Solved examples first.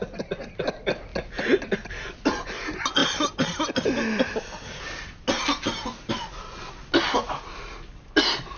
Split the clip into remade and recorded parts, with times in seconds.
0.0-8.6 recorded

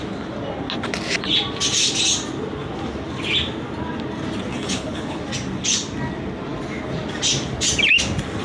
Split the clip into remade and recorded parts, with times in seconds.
0.0-4.5 recorded; 4.5-5.2 remade; 5.2-8.4 recorded